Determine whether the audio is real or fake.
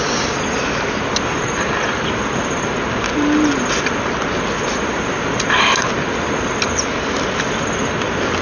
real